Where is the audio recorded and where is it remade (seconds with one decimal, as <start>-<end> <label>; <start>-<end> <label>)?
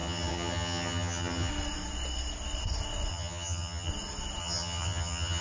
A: 0.0-1.5 remade; 1.5-3.1 recorded; 3.1-3.9 remade; 3.9-4.4 recorded; 4.4-5.4 remade